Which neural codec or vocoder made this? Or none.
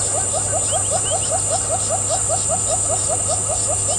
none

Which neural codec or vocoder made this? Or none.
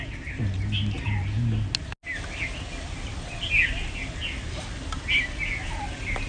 none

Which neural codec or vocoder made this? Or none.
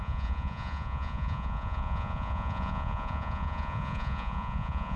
vocoder, Vocos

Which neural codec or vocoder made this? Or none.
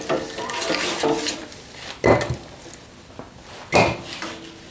none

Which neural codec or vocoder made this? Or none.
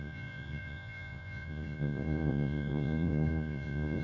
vocoder, Vocos